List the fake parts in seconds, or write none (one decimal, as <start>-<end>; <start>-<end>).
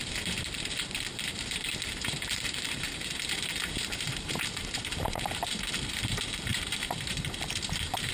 1.1-6.0; 6.5-8.1